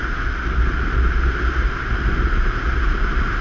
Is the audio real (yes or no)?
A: yes